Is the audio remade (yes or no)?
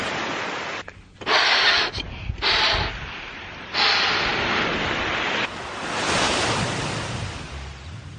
no